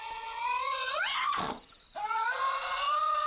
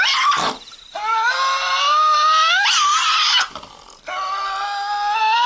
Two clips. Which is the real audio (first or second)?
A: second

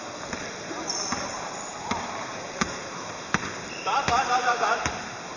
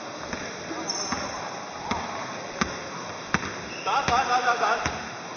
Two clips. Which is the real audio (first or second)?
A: second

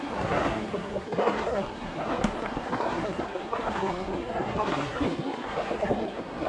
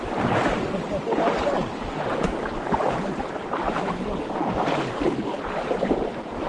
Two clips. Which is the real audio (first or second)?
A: second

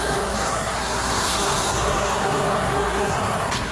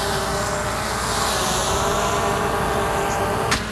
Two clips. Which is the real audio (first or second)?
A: second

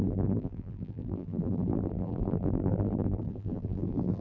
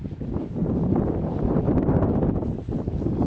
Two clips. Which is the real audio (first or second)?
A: second